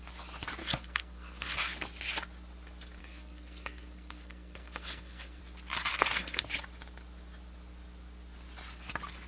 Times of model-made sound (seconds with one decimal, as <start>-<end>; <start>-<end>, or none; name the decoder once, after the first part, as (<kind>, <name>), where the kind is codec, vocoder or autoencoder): 0.6-1.6 (codec, SNAC); 3.0-5.4; 5.9-6.4